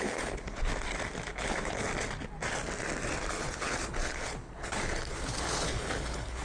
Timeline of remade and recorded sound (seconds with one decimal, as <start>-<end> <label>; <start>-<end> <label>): 0.0-0.7 remade; 0.7-1.3 recorded; 1.3-1.9 remade; 1.9-3.3 recorded; 3.3-6.4 remade